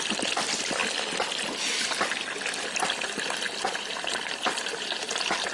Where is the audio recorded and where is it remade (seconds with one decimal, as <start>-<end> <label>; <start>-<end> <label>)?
0.0-5.5 recorded